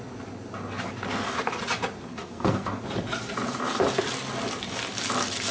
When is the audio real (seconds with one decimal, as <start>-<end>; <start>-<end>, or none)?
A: 0.0-2.1; 2.8-5.5